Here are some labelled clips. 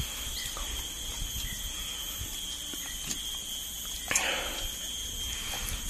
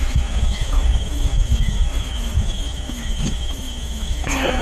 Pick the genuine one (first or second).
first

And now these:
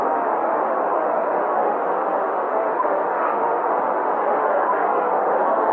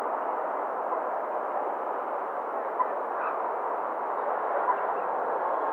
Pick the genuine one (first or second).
second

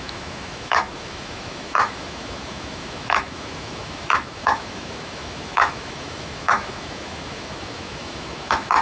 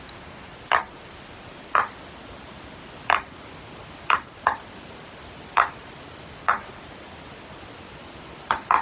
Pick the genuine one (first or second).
second